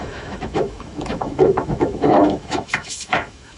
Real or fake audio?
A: fake